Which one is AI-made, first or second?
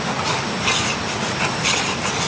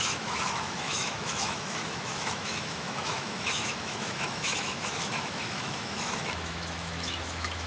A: second